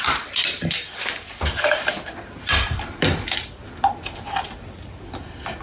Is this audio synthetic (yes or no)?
yes